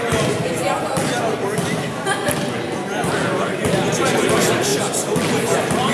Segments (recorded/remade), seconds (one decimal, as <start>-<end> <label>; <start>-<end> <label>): 0.0-5.9 recorded

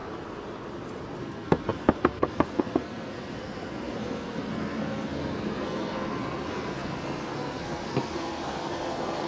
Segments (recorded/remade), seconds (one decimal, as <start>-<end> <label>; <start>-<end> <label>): 0.0-1.2 recorded; 1.2-9.3 remade

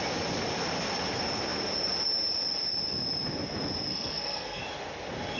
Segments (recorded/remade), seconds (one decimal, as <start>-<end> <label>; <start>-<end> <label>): 0.0-3.9 recorded; 3.9-4.6 remade; 4.6-5.4 recorded

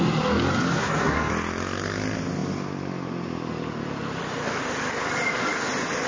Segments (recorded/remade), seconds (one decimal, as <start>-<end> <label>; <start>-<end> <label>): 0.0-0.8 recorded; 0.8-1.3 remade; 1.3-6.1 recorded

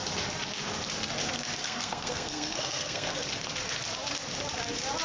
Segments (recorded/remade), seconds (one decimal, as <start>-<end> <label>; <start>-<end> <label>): 0.0-1.6 recorded; 1.6-3.1 remade; 3.1-5.0 recorded